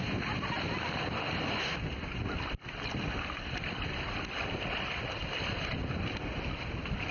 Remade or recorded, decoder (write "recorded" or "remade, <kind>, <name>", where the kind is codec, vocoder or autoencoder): recorded